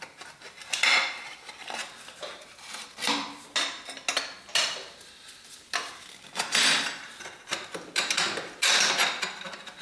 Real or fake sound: real